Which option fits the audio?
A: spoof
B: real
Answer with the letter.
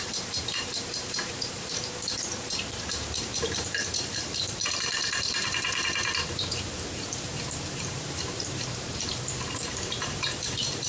A